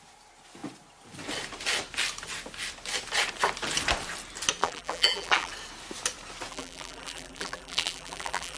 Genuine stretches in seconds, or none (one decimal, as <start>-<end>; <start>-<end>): 0.0-4.6; 5.5-6.5

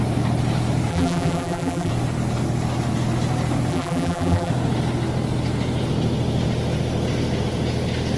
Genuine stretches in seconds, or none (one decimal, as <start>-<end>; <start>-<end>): 0.0-0.9; 1.9-3.7; 4.5-8.2